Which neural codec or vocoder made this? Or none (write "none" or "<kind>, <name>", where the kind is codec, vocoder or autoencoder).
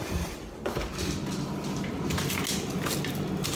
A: none